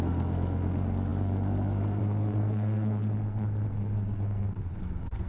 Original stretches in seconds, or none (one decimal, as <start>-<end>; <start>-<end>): none